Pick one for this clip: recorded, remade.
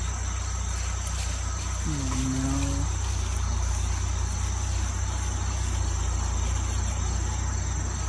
recorded